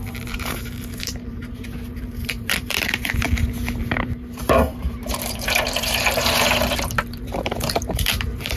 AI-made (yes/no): yes